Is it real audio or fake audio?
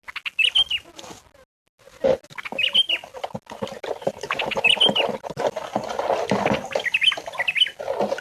real